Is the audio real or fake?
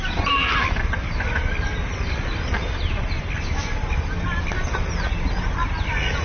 real